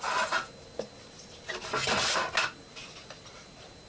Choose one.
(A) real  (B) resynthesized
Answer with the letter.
A